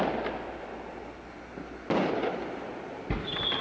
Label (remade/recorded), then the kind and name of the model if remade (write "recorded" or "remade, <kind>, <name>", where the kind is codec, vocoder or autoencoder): recorded